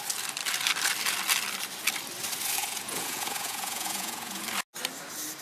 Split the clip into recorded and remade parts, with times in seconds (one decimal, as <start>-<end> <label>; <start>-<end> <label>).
0.0-2.6 recorded; 2.6-4.4 remade; 4.4-5.4 recorded